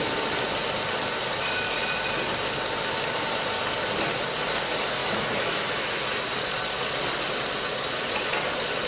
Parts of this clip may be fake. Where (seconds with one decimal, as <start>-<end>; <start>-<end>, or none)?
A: 5.0-5.9